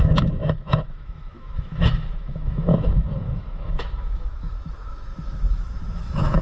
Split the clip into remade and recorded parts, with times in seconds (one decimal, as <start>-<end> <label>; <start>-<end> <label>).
0.0-6.4 remade